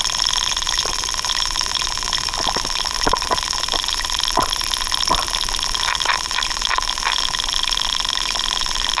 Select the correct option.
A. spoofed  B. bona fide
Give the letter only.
B